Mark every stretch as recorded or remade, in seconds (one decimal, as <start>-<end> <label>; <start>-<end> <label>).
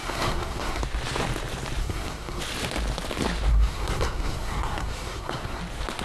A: 0.0-0.8 remade; 0.8-1.8 recorded; 1.8-2.4 remade; 2.4-3.5 recorded; 3.5-5.6 remade; 5.6-6.0 recorded